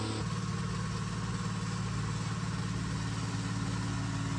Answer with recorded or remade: recorded